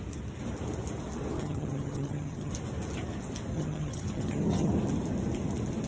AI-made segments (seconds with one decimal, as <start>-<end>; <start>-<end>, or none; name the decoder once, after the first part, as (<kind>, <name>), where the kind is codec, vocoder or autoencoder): 1.4-2.5 (vocoder, HiFi-GAN); 3.5-4.7